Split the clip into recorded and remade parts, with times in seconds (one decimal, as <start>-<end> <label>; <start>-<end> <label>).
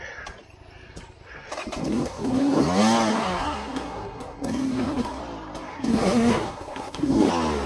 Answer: 0.0-1.8 recorded; 1.8-2.6 remade; 2.6-3.1 recorded; 3.1-5.2 remade; 5.2-5.7 recorded; 5.7-7.3 remade; 7.3-7.7 recorded